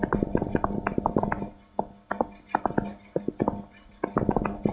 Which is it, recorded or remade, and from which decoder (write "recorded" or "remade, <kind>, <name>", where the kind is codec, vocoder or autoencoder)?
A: recorded